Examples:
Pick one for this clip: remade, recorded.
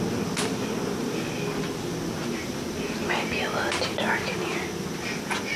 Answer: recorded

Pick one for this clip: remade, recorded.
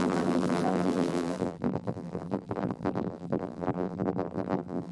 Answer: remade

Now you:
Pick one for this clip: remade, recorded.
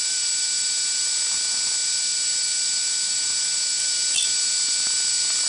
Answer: recorded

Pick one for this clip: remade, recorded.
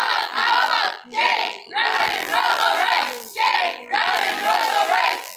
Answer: remade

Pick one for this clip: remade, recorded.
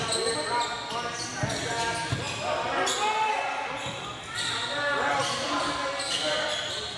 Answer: recorded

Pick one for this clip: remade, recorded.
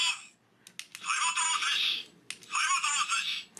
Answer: recorded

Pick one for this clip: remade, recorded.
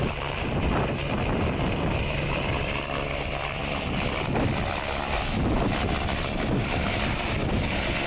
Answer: remade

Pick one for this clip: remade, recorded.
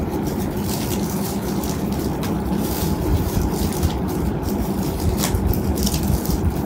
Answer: remade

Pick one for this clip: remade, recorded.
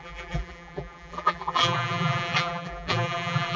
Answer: remade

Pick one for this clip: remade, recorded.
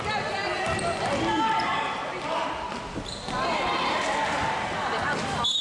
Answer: remade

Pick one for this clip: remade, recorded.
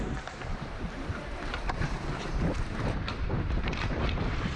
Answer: remade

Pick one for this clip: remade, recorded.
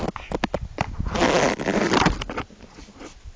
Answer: recorded